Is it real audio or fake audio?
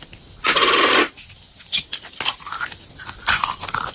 real